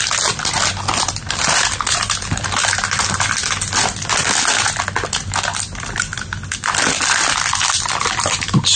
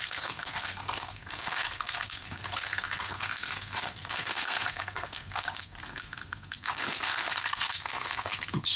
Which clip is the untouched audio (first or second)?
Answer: first